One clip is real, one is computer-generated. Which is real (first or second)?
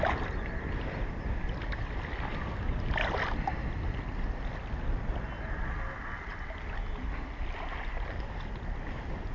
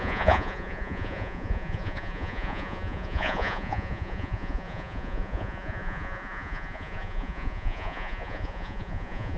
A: first